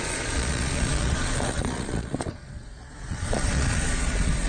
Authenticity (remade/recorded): remade